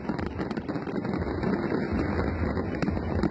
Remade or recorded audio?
recorded